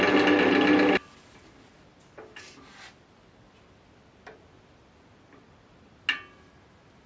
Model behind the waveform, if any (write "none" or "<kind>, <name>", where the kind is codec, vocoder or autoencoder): none